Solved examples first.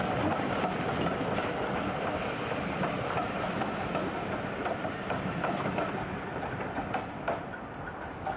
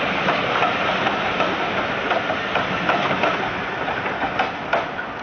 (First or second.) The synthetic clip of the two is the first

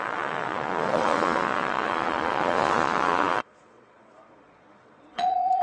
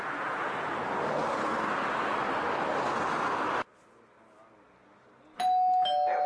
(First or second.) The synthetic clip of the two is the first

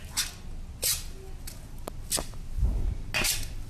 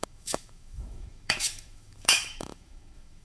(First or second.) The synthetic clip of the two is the second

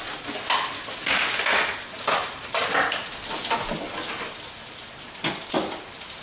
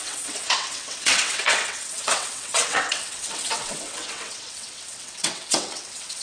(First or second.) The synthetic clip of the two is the second